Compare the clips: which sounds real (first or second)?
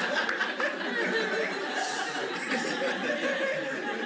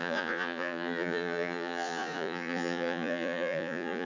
first